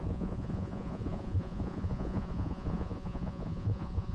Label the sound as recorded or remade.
remade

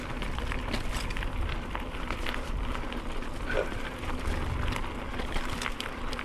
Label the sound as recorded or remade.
recorded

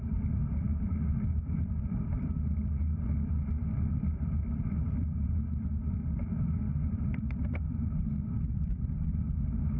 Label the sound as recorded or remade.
remade